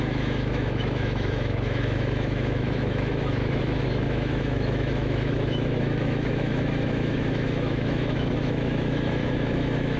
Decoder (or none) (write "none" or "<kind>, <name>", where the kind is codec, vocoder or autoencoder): autoencoder, DAC-VAE